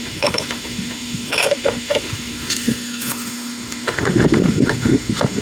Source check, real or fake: fake